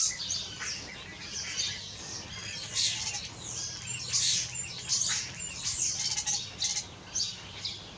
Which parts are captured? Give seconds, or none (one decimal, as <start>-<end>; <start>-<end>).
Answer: 0.0-8.0